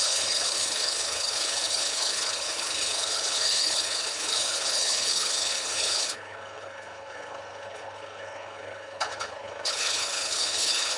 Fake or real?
fake